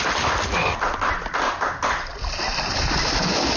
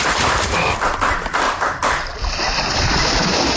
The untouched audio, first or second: first